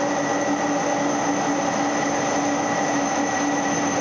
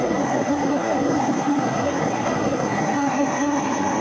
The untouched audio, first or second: first